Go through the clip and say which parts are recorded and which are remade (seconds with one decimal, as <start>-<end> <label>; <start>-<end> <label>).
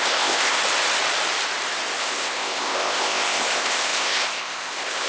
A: 0.0-0.6 remade; 0.6-2.0 recorded; 2.0-5.1 remade